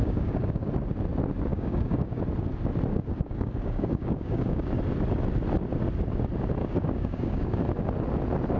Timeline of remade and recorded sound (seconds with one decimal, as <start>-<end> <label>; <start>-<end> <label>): 0.0-0.7 remade; 0.7-1.5 recorded; 1.5-2.2 remade; 2.2-2.9 recorded; 2.9-4.8 remade; 4.8-6.6 recorded; 6.6-7.6 remade; 7.6-8.6 recorded